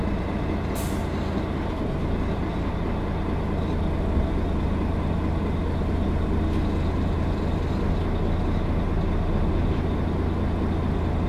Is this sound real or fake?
real